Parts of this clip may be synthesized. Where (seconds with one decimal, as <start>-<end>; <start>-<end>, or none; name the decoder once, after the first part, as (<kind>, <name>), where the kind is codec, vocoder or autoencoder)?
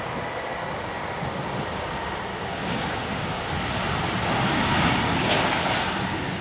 2.3-3.4 (codec, DAC)